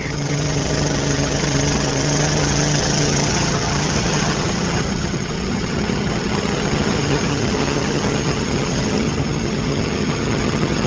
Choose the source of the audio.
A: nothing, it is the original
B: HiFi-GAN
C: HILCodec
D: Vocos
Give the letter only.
B